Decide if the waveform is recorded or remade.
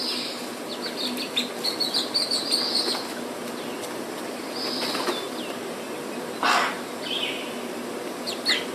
recorded